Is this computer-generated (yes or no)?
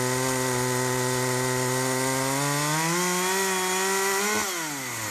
no